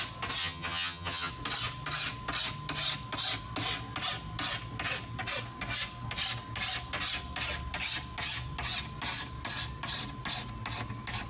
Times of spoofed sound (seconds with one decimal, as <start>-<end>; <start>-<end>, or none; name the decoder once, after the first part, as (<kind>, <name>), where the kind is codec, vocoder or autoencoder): 0.4-1.3 (vocoder, HiFi-GAN)